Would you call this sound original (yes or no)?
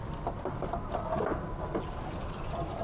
yes